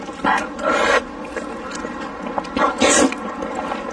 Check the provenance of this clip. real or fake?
real